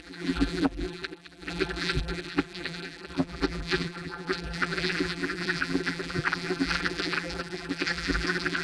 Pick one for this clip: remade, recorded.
remade